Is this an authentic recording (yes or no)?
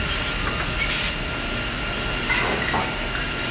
yes